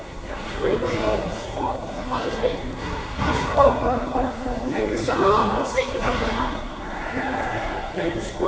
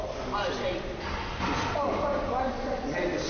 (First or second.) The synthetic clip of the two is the first